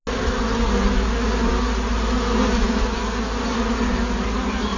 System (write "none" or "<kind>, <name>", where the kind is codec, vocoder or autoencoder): none